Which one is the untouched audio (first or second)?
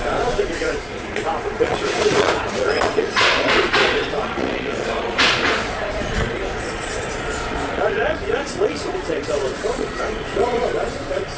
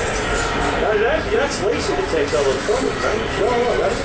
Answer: second